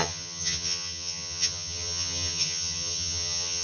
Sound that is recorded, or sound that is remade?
remade